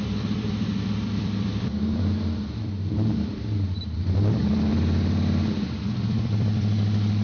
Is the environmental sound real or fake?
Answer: fake